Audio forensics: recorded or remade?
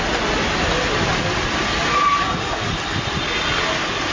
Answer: recorded